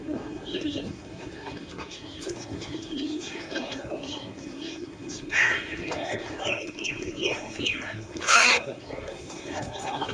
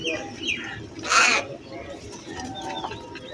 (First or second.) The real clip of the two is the second